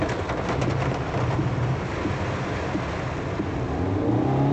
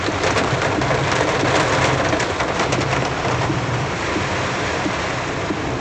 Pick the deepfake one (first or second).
second